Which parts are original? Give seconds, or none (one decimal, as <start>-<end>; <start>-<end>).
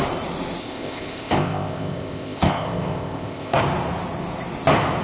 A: 0.0-0.6; 3.6-5.0